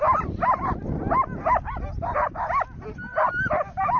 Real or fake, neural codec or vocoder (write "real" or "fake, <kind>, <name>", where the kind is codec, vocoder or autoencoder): real